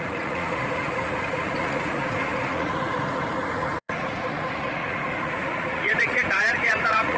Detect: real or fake fake